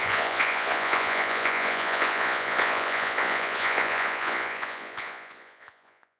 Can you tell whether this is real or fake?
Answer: fake